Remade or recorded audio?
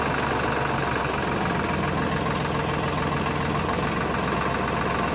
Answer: recorded